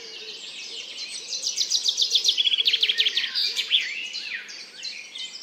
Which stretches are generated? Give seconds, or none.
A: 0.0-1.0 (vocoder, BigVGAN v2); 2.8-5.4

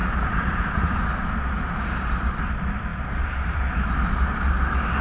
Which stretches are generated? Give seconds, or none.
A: 0.0-1.0 (vocoder, BigVGAN v2)

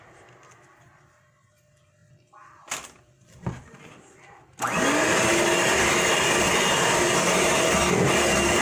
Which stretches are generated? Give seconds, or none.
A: none

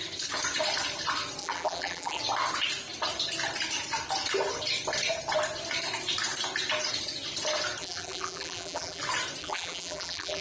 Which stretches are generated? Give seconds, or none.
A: 1.4-2.2 (vocoder, BigVGAN v2); 7.8-9.0; 9.4-10.4

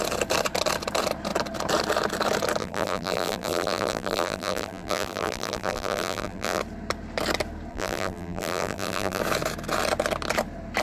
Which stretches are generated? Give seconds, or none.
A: 2.6-6.6 (vocoder, BigVGAN v2); 7.7-9.2